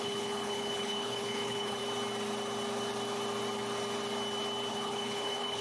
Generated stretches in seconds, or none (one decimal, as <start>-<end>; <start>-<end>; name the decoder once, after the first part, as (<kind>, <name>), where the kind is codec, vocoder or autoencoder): 0.0-1.8 (codec, HILCodec); 4.7-5.6